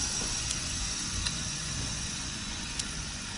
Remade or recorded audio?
remade